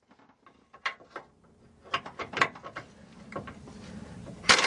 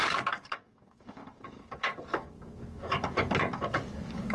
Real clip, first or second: first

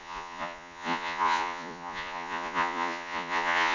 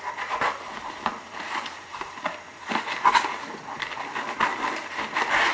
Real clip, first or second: second